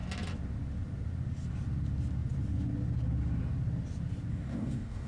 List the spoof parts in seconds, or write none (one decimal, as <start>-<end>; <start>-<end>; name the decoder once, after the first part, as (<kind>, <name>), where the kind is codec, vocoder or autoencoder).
4.3-5.1 (codec, DAC)

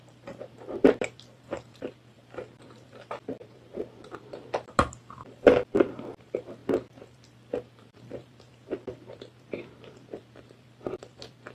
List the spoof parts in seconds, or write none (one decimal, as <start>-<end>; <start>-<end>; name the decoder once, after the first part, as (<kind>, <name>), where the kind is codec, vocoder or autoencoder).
0.0-11.5 (vocoder, BigVGAN v2)

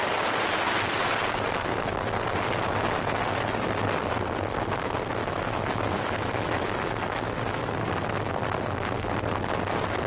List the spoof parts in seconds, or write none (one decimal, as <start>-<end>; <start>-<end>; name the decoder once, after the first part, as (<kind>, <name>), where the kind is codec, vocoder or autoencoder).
5.2-7.7 (autoencoder, DAC-VAE)

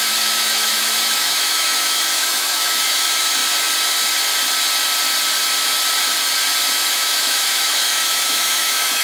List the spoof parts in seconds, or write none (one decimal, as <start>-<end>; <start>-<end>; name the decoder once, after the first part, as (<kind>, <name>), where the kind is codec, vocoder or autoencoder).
0.0-3.4 (autoencoder, DAC-VAE); 6.9-9.0

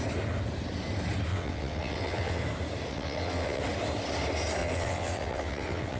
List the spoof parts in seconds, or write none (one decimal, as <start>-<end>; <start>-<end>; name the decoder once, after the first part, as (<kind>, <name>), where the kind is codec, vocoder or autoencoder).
1.3-2.4 (vocoder, WaveNeXt); 2.9-3.6; 4.6-6.0

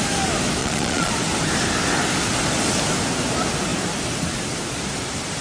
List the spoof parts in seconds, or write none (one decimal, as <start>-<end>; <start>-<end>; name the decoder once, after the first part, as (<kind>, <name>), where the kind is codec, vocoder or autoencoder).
0.6-1.1 (vocoder, Vocos)

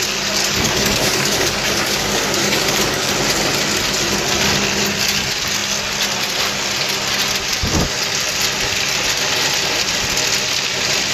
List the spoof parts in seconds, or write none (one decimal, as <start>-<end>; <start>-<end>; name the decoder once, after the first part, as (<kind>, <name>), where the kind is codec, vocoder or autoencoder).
0.4-3.1 (codec, DAC)

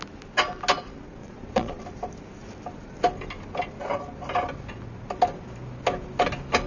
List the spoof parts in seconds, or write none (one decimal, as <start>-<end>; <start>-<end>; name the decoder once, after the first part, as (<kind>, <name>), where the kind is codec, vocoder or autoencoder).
1.2-1.8 (vocoder, Vocos)